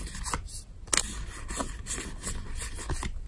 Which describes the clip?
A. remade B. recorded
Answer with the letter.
B